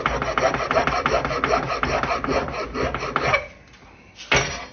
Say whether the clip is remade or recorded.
recorded